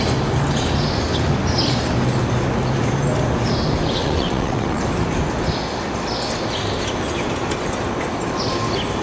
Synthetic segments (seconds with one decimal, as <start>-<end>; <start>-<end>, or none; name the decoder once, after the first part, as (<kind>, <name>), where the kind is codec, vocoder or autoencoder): 4.0-4.8 (vocoder, WaveNeXt)